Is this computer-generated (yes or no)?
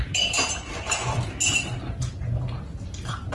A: no